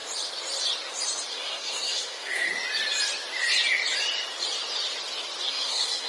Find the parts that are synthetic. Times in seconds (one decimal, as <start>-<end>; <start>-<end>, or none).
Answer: 1.3-2.5; 5.5-6.1